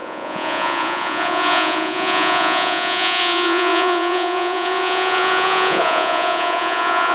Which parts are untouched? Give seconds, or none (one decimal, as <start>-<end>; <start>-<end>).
none